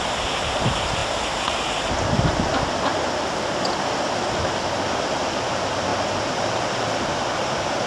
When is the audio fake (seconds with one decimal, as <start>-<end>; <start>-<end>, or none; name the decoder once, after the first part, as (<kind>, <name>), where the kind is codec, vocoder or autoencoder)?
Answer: 0.0-1.0 (vocoder, BigVGAN v2); 5.5-7.9